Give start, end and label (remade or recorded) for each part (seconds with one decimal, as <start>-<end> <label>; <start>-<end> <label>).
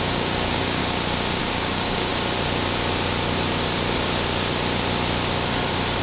0.0-0.8 remade; 0.8-1.4 recorded; 1.4-2.1 remade; 2.1-6.0 recorded